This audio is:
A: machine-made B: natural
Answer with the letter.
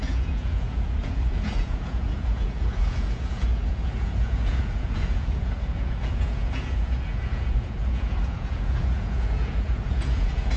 A